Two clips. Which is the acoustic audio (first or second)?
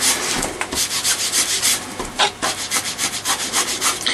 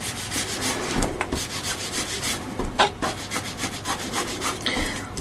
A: first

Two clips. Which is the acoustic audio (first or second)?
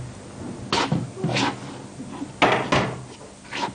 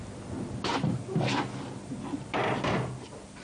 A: first